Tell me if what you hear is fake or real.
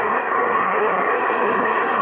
fake